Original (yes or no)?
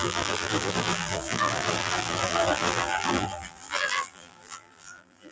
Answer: no